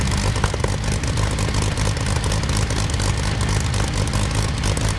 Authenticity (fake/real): real